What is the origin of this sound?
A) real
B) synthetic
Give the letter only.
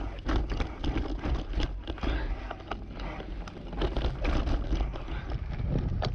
A